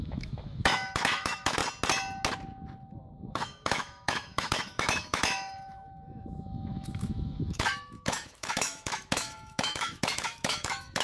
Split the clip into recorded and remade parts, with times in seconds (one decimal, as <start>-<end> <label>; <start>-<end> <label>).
0.0-1.6 remade; 1.6-3.3 recorded; 3.3-11.0 remade